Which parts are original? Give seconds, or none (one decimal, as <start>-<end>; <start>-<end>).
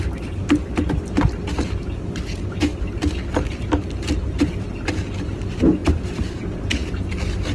0.0-2.7; 3.3-7.5